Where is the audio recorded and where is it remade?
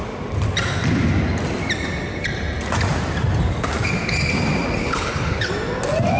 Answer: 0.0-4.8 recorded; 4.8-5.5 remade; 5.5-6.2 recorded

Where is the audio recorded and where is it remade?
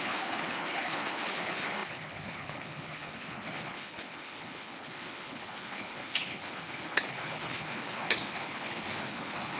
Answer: 0.0-9.6 remade